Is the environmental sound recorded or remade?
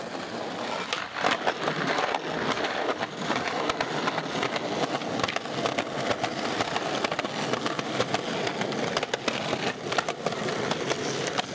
recorded